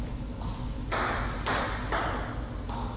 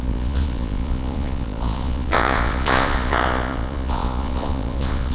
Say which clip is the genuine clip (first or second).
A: first